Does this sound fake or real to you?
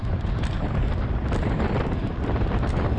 fake